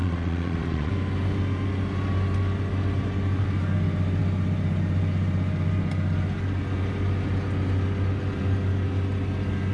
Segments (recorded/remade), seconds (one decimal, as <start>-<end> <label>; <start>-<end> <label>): 0.0-0.9 remade; 0.9-9.7 recorded